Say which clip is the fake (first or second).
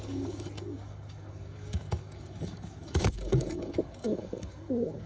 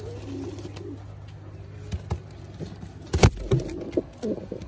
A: first